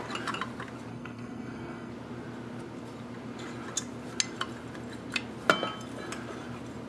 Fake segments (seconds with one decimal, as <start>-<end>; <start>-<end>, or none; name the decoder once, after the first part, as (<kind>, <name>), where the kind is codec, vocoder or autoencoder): 0.9-1.9 (codec, SNAC)

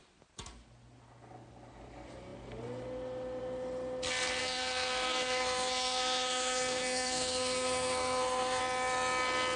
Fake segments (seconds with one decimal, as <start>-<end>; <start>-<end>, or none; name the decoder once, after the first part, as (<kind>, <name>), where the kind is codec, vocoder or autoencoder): 4.4-8.6 (codec, SNAC)

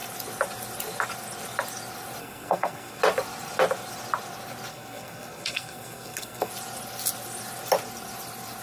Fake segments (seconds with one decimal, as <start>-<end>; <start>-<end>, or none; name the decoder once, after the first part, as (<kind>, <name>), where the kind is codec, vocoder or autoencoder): 2.2-3.0 (codec, SNAC); 4.7-6.5

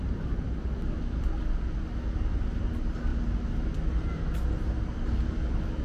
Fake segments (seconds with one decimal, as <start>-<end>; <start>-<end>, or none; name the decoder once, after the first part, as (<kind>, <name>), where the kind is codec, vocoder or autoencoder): none

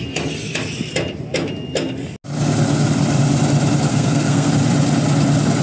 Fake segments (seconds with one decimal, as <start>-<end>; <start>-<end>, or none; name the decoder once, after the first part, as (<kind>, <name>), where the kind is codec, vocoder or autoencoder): 3.9-4.5 (codec, SNAC)